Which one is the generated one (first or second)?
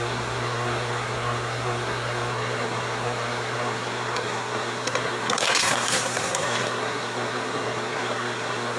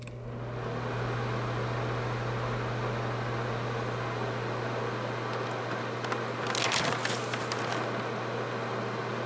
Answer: first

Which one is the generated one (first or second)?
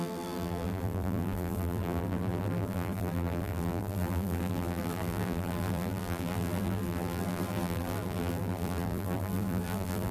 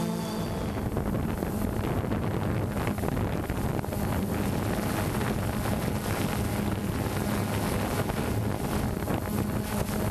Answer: first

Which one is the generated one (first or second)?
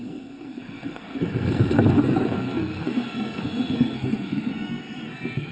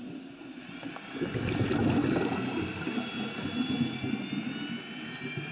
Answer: first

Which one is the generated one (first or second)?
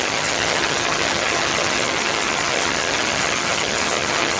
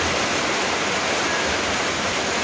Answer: first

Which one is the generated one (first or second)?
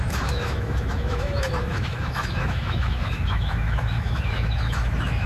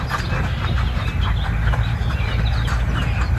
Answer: first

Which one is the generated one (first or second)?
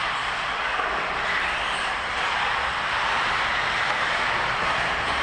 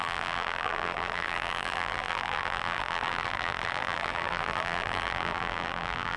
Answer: second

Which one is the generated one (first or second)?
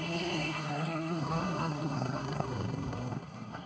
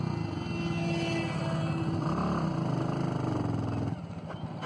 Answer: first